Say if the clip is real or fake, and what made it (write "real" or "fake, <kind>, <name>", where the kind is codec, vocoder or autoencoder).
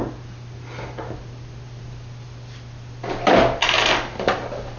real